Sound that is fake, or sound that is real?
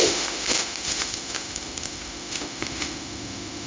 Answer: fake